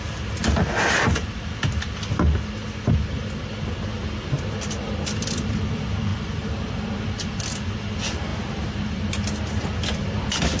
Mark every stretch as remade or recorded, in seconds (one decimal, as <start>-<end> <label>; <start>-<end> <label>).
0.0-6.1 recorded; 6.1-7.0 remade; 7.0-8.3 recorded; 8.3-8.9 remade; 8.9-10.6 recorded

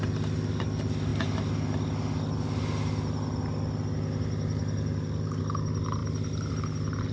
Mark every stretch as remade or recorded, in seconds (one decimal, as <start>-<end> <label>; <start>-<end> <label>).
0.0-7.1 recorded

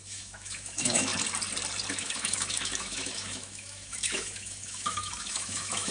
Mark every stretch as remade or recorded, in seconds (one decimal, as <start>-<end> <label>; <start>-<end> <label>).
0.0-1.1 remade; 1.1-1.9 recorded; 1.9-5.9 remade